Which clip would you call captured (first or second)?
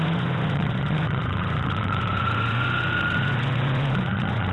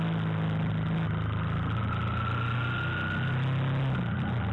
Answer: second